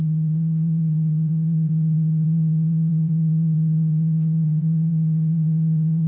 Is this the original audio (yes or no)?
no